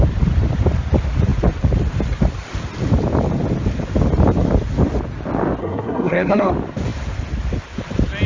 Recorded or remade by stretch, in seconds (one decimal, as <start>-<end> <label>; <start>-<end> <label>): 0.0-5.6 recorded; 5.6-6.5 remade; 6.5-8.3 recorded